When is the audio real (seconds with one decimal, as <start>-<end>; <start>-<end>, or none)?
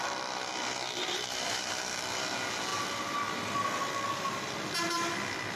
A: 0.0-5.6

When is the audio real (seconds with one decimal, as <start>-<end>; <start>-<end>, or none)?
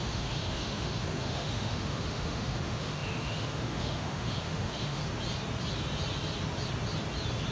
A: 5.0-7.5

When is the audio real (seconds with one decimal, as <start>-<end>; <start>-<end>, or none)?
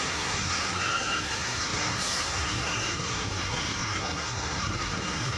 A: none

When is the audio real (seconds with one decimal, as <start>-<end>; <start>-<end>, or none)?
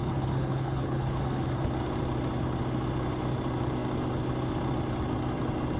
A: 1.2-5.8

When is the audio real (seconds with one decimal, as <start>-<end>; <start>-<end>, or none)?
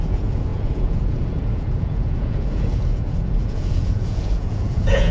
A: none